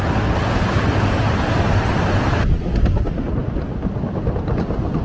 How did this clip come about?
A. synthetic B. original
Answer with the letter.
B